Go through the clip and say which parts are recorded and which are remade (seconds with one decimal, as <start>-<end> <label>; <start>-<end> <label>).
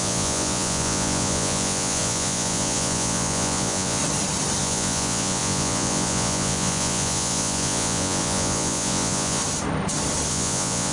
0.0-4.0 remade; 4.0-4.6 recorded; 4.6-9.4 remade; 9.4-10.3 recorded; 10.3-10.9 remade